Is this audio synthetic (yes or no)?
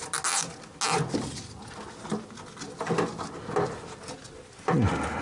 no